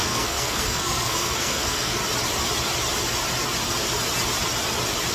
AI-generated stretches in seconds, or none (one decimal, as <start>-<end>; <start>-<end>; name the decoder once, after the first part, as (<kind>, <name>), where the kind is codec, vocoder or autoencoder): 0.0-2.0 (codec, SNAC)

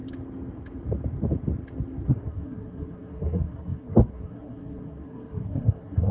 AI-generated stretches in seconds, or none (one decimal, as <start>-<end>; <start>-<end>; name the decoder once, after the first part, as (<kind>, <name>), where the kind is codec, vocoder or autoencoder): 2.1-6.1 (codec, SNAC)